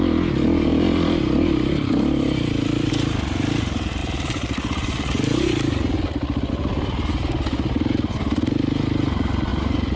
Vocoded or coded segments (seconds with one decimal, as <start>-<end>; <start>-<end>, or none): 0.7-2.9; 4.0-6.5